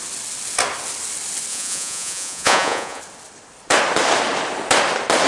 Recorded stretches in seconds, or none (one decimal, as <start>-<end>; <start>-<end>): 0.0-1.5; 3.0-5.3